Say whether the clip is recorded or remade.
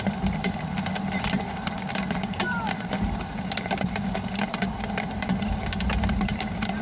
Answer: remade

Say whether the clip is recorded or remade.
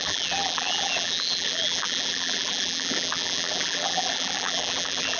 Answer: remade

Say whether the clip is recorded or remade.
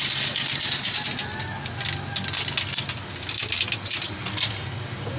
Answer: recorded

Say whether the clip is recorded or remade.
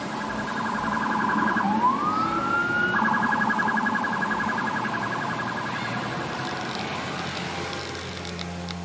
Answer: recorded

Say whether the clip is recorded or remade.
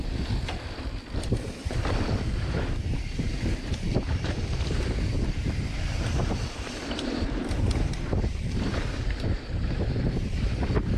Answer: remade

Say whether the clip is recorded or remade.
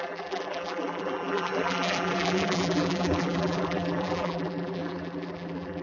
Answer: remade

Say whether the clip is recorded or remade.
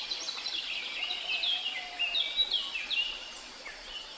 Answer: recorded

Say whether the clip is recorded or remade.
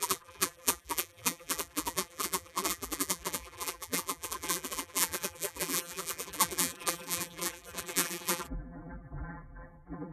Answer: remade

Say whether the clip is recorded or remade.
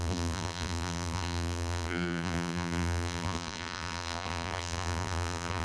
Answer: remade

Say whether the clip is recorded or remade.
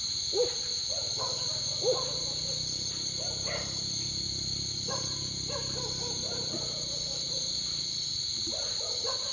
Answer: remade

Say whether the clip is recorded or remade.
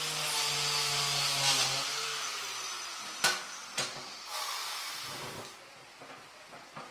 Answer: recorded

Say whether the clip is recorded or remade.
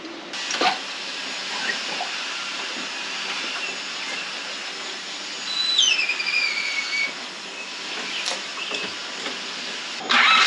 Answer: recorded